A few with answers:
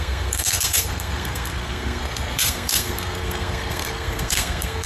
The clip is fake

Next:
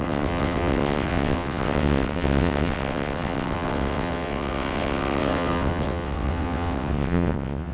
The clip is fake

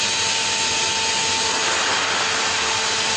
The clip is real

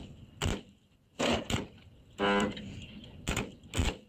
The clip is real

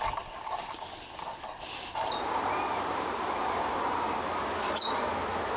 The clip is real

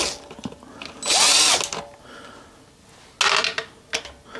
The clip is real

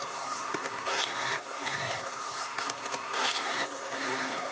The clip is fake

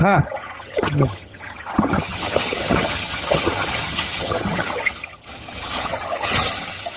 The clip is fake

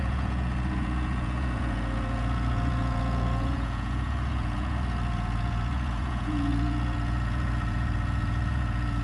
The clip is fake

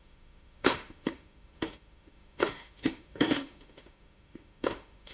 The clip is fake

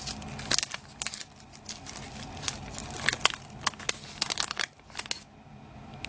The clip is real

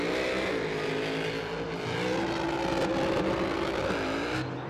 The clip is real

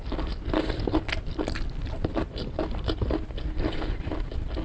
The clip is real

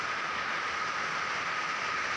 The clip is real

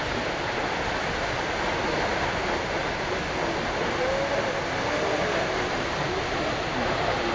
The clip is real